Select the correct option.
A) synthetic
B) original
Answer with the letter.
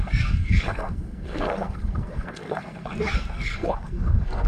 A